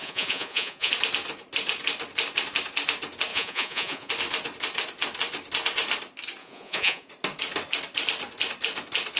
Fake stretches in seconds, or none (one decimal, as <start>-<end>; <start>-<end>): 0.0-0.9; 3.3-4.1; 6.4-7.1